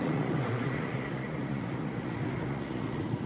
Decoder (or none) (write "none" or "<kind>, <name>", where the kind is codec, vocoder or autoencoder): vocoder, Vocos